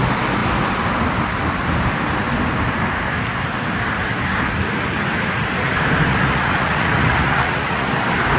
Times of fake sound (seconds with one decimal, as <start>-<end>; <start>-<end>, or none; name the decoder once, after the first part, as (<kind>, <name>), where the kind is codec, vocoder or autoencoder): 6.1-7.9 (vocoder, Vocos)